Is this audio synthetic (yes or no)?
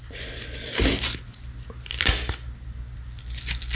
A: no